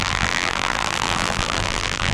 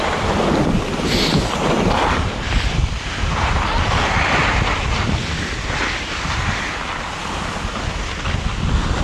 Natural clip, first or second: second